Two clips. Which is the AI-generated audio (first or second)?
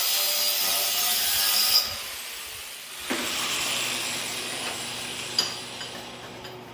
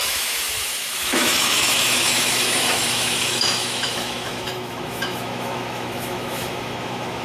second